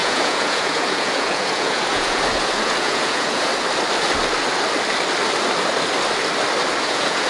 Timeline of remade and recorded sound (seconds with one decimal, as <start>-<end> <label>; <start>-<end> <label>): 0.0-3.5 remade; 3.5-6.8 recorded; 6.8-7.3 remade